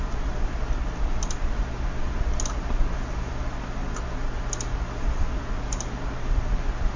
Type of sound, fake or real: real